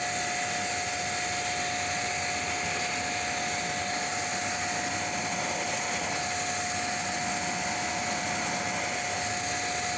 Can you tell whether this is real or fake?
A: real